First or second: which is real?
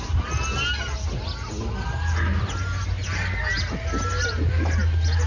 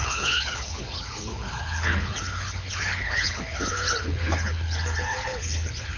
first